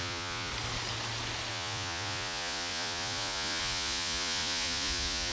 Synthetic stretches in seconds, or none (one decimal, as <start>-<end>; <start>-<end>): 0.0-0.5; 1.5-5.3

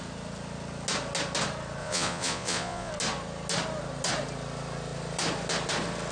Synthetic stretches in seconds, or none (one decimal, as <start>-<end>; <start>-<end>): 1.8-2.9

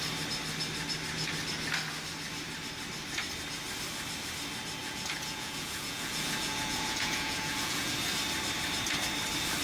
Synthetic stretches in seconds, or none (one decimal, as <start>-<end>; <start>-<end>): 4.8-7.9

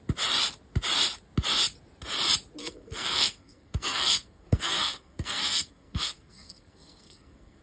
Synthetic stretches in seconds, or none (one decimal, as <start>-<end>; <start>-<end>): 2.6-7.6

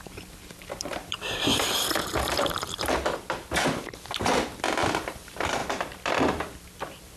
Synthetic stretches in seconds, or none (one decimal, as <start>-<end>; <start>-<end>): 0.0-1.5; 4.6-5.6; 6.6-7.2

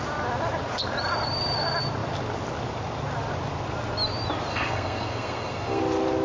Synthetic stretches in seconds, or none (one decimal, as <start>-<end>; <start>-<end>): 4.5-5.8